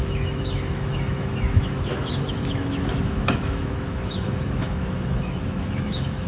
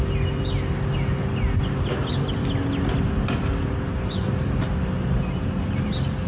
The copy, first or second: first